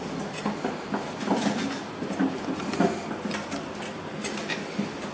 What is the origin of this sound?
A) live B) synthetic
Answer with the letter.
A